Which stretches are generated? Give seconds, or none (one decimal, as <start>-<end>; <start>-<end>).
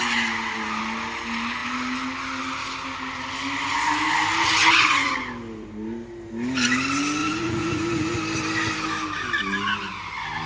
4.6-5.1; 7.2-8.2